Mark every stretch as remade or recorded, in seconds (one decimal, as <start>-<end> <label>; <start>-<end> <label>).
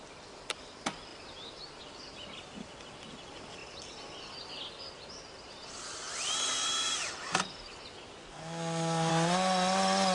0.0-8.2 recorded; 8.2-9.1 remade; 9.1-10.1 recorded